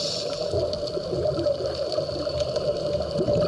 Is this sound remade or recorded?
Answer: recorded